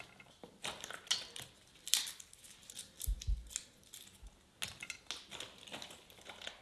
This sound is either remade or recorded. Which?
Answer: recorded